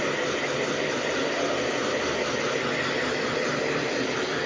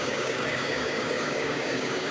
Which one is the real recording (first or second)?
first